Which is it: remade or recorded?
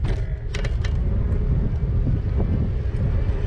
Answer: recorded